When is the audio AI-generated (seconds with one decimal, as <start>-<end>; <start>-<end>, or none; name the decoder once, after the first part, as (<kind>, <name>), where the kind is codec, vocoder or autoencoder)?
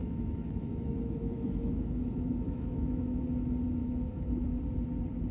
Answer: 0.0-3.2 (autoencoder, DAC-VAE); 3.8-4.6